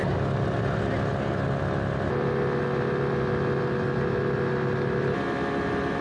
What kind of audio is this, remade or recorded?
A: recorded